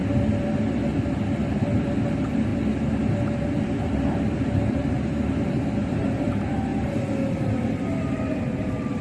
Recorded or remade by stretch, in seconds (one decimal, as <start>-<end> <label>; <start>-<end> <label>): 0.0-2.1 recorded; 2.1-2.5 remade; 2.5-4.7 recorded; 4.7-6.7 remade; 6.7-8.0 recorded; 8.0-9.0 remade